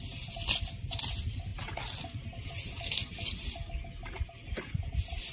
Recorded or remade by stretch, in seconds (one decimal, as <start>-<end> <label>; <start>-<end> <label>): 0.0-5.3 recorded